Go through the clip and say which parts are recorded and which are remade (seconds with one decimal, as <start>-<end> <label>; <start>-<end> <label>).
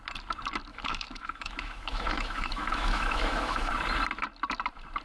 0.0-0.7 recorded; 0.7-3.7 remade; 3.7-5.0 recorded